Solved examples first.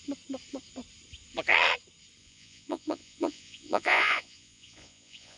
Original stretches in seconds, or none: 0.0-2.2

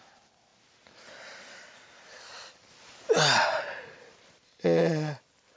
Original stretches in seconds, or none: 0.0-5.6

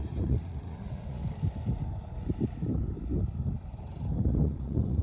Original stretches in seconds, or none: 1.2-4.2

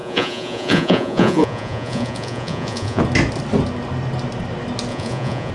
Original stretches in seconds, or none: 3.0-4.9

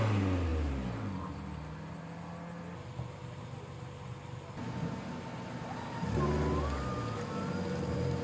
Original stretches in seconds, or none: 0.0-8.2

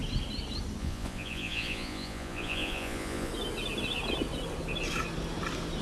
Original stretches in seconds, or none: 0.0-0.8; 3.3-5.8